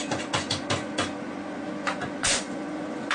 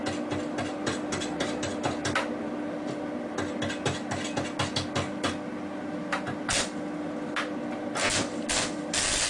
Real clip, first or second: second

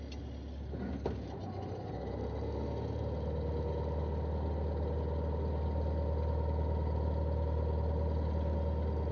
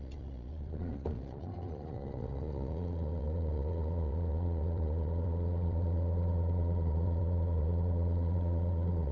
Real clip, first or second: first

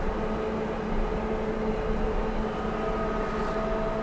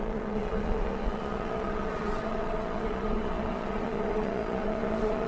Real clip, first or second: first